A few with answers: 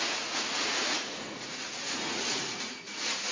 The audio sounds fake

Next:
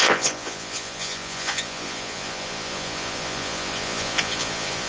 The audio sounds fake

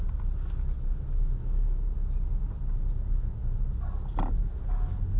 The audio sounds real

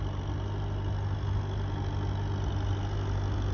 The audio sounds real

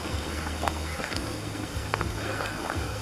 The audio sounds fake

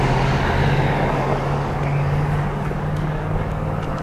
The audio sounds fake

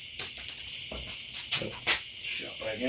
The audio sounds real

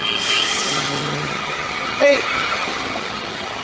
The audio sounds fake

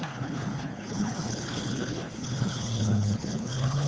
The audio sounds fake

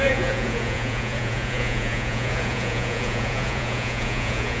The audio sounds fake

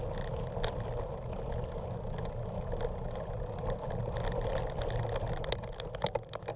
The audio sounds real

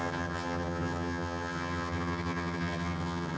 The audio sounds fake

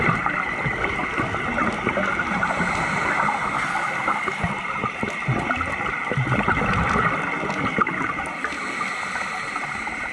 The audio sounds real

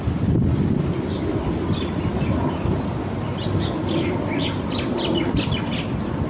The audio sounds real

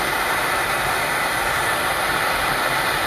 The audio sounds real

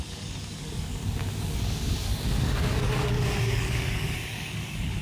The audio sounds fake